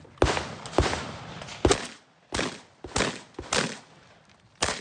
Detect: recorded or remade recorded